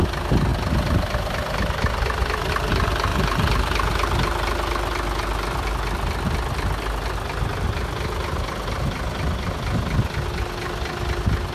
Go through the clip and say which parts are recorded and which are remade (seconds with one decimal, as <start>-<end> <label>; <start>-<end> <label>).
0.0-11.5 recorded